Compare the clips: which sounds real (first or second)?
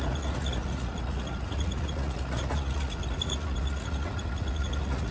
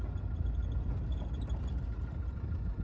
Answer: second